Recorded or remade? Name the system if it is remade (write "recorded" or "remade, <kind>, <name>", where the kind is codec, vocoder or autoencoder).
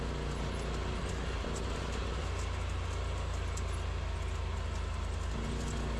recorded